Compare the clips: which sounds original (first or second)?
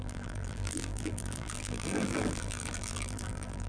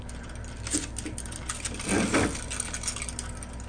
second